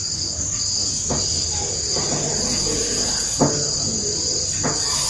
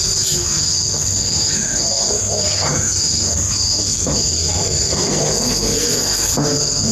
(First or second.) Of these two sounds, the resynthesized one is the second